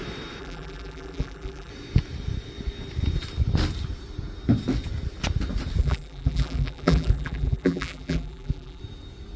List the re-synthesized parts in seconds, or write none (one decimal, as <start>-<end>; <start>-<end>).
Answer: 0.4-1.7; 5.8-8.8